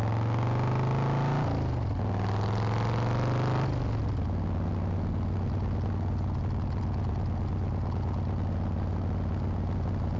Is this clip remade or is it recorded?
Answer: recorded